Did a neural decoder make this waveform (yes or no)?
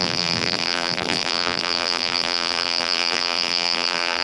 yes